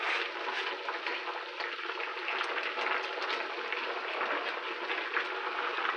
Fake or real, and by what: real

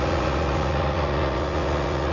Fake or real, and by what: fake, vocoder, Vocos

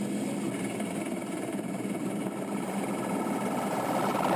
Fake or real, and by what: real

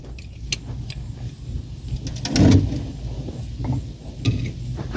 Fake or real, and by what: real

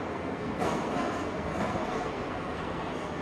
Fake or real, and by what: fake, codec, SNAC